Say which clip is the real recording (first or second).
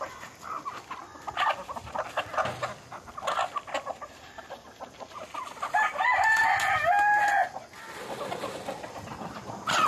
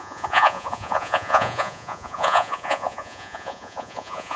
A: first